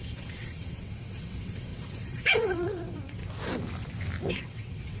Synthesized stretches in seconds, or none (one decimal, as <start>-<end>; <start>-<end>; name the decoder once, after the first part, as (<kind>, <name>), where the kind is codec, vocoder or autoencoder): 0.0-3.2 (vocoder, WaveNeXt); 4.3-5.0